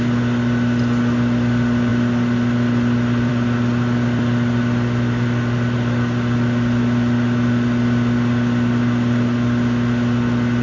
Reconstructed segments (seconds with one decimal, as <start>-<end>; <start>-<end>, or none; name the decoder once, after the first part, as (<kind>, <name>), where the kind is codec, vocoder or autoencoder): none